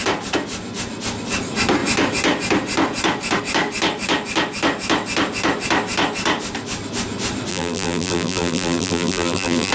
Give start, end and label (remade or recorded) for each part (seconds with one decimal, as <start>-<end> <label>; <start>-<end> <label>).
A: 0.0-7.5 recorded; 7.5-9.7 remade